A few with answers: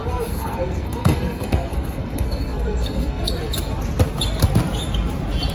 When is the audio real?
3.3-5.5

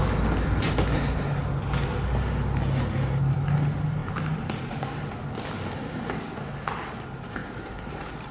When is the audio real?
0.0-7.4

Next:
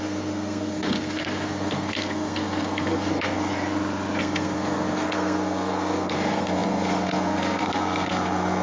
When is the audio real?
3.5-4.2

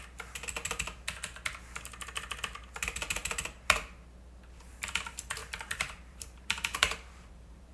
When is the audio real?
0.0-5.4

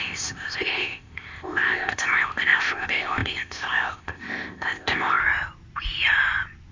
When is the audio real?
5.2-6.7

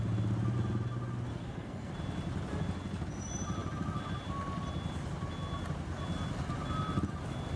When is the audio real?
0.0-1.3; 1.9-7.6

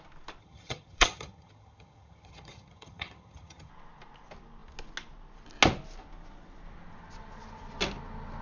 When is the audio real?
0.0-0.4; 3.7-8.4

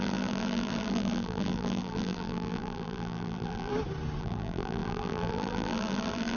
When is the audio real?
3.7-4.2